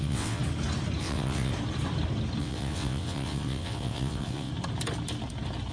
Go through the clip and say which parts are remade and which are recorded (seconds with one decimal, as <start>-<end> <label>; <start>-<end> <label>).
0.0-0.4 remade; 0.4-1.0 recorded; 1.0-1.5 remade; 1.5-2.4 recorded; 2.4-4.5 remade; 4.5-5.7 recorded